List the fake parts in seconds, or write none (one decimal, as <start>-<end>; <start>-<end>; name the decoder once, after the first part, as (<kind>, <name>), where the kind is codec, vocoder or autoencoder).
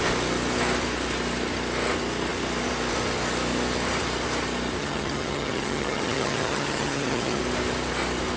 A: 4.8-7.4 (vocoder, HiFi-GAN)